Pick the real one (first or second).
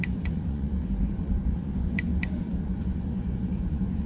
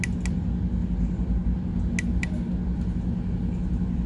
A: second